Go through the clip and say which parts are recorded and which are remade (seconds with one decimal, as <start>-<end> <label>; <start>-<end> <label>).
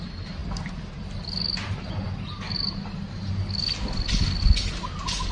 0.0-5.3 recorded